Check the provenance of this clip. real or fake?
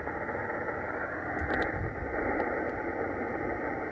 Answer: real